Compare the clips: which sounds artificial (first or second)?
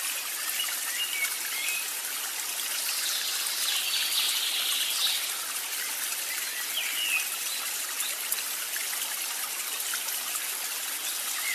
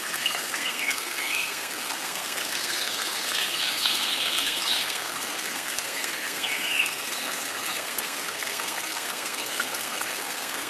second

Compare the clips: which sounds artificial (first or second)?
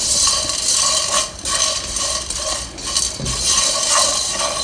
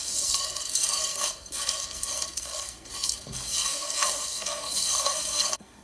second